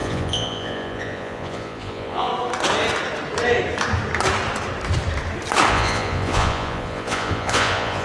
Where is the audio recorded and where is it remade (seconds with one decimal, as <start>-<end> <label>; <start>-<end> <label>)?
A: 0.0-2.3 remade; 2.3-5.7 recorded; 5.7-8.0 remade